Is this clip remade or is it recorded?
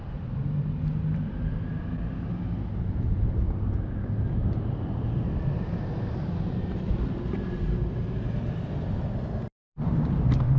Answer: recorded